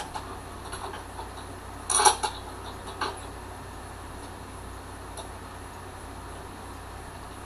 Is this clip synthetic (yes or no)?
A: no